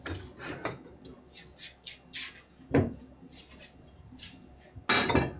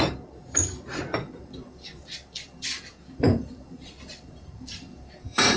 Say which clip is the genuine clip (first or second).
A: first